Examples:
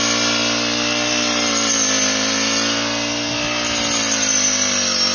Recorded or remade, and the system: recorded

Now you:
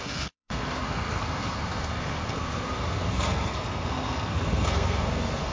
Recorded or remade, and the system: remade, codec, SNAC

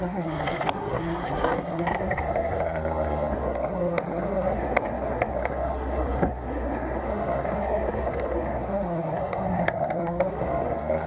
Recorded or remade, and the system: remade, codec, SNAC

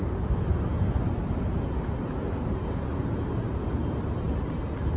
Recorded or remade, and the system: recorded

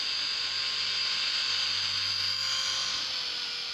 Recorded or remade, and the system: recorded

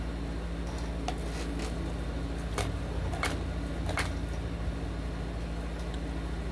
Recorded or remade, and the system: recorded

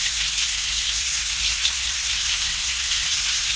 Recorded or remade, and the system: remade, codec, SNAC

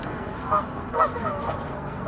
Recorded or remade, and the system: remade, codec, SNAC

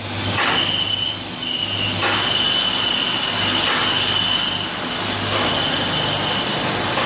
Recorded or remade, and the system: recorded